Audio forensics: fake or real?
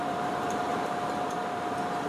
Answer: fake